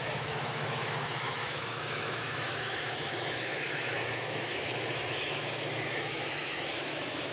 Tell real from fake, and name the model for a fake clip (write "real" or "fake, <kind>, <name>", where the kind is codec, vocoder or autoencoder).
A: fake, autoencoder, DAC-VAE